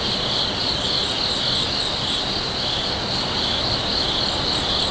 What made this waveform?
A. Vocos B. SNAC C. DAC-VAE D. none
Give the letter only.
D